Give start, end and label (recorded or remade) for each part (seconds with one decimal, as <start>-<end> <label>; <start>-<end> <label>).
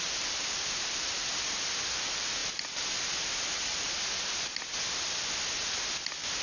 0.0-6.4 recorded